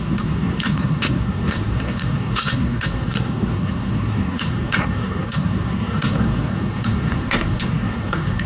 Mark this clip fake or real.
fake